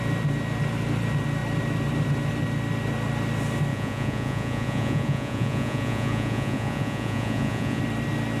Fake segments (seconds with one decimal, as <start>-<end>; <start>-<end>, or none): 3.7-7.8